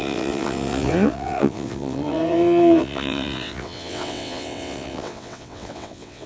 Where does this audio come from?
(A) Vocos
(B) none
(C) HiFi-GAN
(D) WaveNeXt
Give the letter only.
D